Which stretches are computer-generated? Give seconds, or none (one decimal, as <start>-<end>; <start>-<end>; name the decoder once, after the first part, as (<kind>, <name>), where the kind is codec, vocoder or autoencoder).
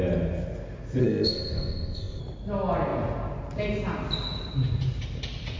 1.0-2.2 (codec, ZipCodec)